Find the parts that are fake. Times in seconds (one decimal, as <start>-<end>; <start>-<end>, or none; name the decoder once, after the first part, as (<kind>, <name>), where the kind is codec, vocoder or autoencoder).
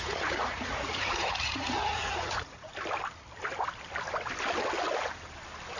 0.0-2.7 (vocoder, Vocos)